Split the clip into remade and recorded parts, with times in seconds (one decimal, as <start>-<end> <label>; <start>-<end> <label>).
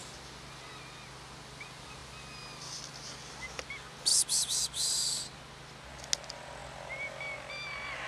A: 0.0-8.1 recorded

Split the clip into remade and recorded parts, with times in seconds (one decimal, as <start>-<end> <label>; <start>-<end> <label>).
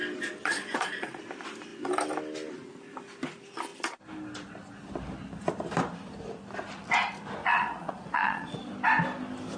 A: 0.0-0.4 recorded; 0.4-1.2 remade; 1.2-7.4 recorded; 7.4-8.7 remade; 8.7-9.6 recorded